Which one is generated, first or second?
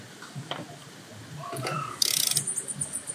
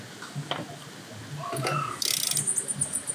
first